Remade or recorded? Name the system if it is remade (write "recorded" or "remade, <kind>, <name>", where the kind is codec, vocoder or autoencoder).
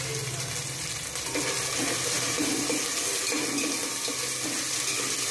recorded